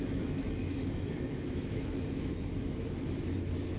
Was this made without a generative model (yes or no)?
no